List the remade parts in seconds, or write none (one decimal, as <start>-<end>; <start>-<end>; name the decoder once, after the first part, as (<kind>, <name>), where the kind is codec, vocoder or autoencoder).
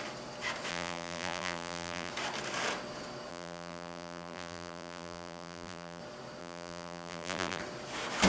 0.7-2.1 (vocoder, BigVGAN v2); 3.3-6.0; 6.4-7.6